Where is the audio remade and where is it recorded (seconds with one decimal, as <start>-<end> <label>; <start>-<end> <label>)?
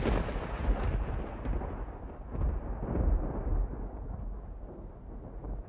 0.0-5.7 recorded